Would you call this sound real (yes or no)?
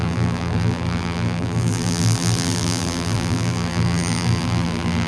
no